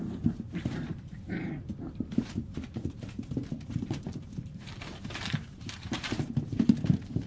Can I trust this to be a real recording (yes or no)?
no